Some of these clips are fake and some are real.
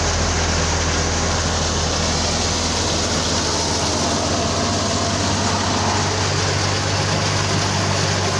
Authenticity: real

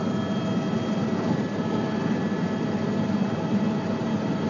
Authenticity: real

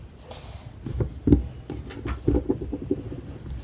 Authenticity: real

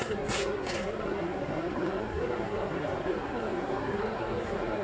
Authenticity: fake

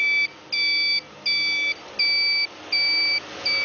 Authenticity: real